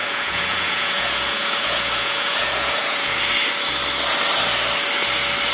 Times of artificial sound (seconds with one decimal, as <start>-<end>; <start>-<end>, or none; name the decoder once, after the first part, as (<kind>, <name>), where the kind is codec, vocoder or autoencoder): 0.0-3.3 (vocoder, Vocos)